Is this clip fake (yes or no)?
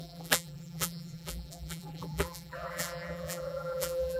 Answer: yes